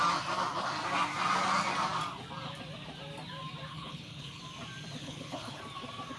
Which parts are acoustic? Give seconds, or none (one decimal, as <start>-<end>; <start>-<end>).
0.0-3.7; 4.4-5.0; 5.6-6.2